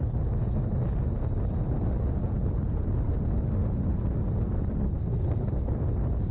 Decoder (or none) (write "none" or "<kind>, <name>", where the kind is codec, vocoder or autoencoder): none